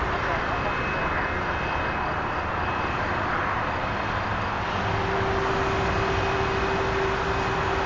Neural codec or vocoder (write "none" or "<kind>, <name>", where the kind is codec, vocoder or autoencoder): none